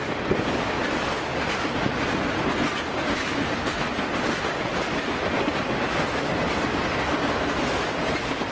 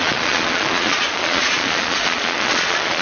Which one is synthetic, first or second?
second